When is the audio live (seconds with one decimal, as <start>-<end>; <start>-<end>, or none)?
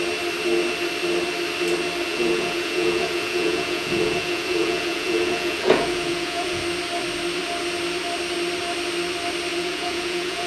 0.0-2.1; 6.6-9.5